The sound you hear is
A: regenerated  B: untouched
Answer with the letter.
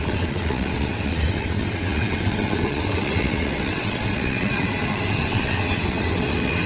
A